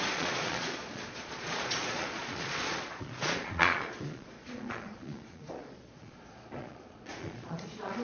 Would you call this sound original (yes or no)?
no